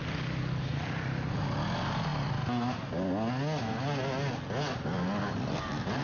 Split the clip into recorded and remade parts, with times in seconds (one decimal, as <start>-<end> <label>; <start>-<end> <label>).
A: 0.0-6.0 recorded